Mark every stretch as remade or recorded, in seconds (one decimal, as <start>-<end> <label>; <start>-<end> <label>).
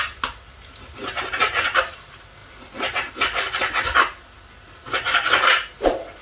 0.0-6.2 recorded